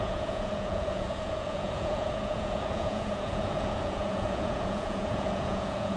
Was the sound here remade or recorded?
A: remade